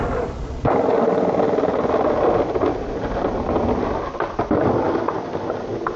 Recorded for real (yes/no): yes